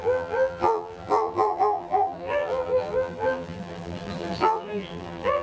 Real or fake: fake